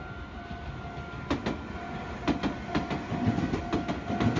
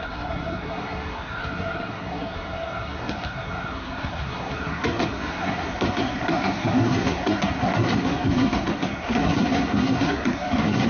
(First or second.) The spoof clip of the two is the second